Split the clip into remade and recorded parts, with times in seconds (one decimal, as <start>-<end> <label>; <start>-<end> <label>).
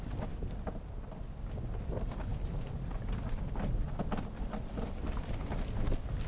0.0-6.3 recorded